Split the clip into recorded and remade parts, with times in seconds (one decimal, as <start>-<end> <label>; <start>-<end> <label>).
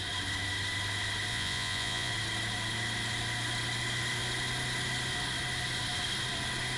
0.0-1.3 recorded; 1.3-2.1 remade; 2.1-6.8 recorded